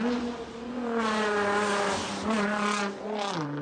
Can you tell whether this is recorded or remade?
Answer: recorded